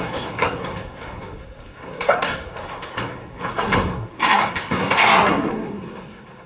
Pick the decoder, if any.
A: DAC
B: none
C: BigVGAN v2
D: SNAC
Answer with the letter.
D